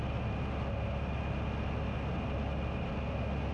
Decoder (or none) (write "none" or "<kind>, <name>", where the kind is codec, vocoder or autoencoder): none